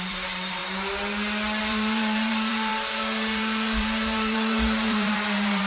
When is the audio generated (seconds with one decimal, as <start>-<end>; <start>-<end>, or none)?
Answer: 0.0-0.6; 1.6-5.7